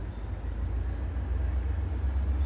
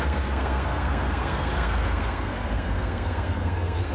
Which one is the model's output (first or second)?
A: second